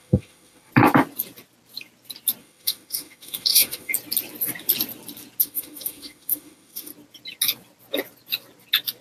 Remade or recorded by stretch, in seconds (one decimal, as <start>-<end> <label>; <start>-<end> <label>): 0.0-0.7 remade; 0.7-2.4 recorded; 2.4-3.9 remade; 3.9-5.4 recorded; 5.4-6.9 remade; 6.9-9.0 recorded

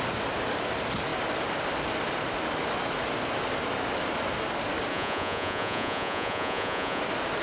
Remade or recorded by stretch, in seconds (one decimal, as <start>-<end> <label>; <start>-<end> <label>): 0.0-4.9 recorded; 4.9-7.0 remade; 7.0-7.4 recorded

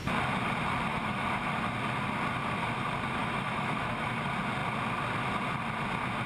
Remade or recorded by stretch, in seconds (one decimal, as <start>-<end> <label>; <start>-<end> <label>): 0.0-0.9 recorded; 0.9-1.6 remade; 1.6-3.2 recorded; 3.2-4.1 remade; 4.1-6.3 recorded

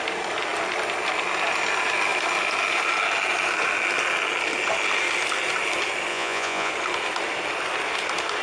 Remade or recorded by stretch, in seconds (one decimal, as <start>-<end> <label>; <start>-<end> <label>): 0.0-6.1 recorded; 6.1-6.7 remade; 6.7-8.4 recorded

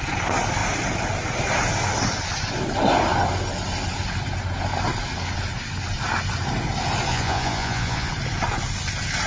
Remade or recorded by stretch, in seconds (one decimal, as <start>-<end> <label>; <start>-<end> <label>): 0.0-7.1 recorded; 7.1-8.1 remade; 8.1-9.3 recorded

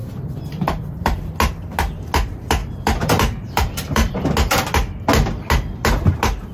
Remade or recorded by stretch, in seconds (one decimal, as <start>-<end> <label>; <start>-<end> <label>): 0.0-1.2 remade; 1.2-2.6 recorded; 2.6-4.1 remade; 4.1-6.5 recorded

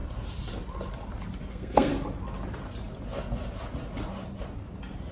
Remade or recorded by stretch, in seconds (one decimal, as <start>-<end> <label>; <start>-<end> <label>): 0.0-1.5 recorded; 1.5-1.9 remade; 1.9-5.1 recorded

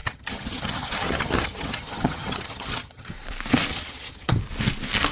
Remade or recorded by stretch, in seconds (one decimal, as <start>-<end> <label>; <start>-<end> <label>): 0.0-3.1 remade; 3.1-3.7 recorded; 3.7-4.3 remade; 4.3-5.1 recorded